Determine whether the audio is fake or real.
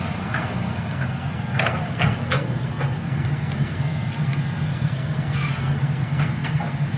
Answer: fake